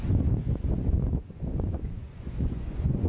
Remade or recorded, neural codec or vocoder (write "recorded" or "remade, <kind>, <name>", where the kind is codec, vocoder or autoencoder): remade, vocoder, Vocos